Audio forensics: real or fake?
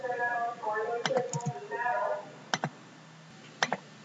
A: real